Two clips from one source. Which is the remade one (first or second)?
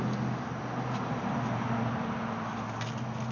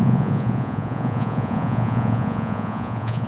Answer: second